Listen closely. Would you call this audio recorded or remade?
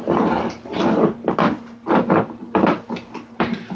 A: recorded